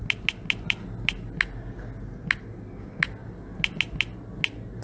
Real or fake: real